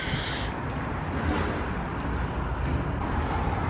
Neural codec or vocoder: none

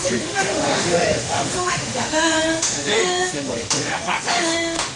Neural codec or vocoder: autoencoder, DAC-VAE